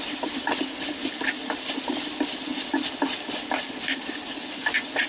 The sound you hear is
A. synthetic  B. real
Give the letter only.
B